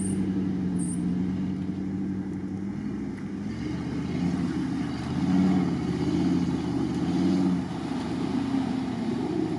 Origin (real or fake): real